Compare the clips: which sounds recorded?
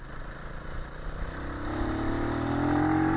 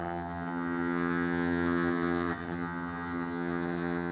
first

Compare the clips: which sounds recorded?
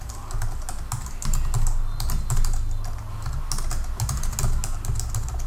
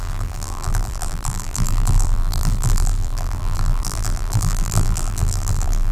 first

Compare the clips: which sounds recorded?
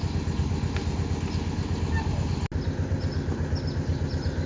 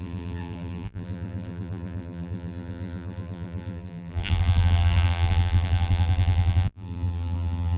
first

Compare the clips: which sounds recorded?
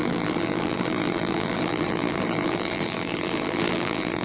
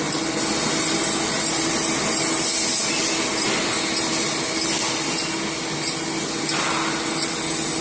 second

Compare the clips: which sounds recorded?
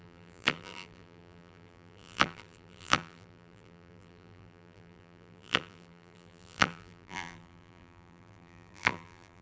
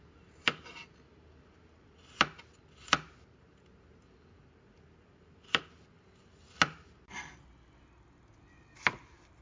second